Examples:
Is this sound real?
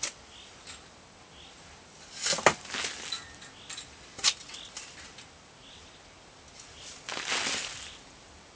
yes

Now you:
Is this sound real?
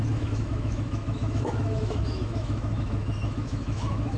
no